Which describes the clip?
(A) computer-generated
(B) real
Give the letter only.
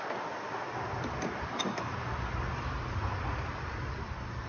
B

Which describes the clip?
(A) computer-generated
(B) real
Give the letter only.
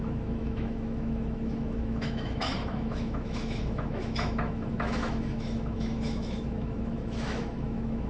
A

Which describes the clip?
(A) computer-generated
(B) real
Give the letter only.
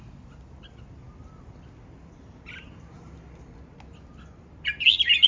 B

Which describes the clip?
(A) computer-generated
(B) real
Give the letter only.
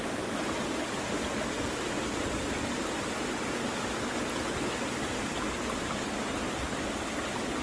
B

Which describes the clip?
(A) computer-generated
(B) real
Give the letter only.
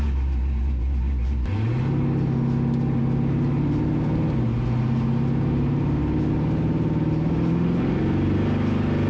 B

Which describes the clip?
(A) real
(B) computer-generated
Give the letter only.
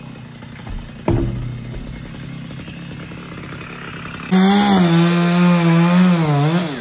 A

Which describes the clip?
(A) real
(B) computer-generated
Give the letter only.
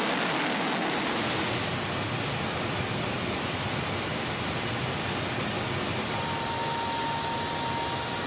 A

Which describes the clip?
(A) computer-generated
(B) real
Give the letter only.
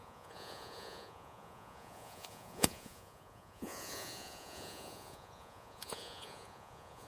A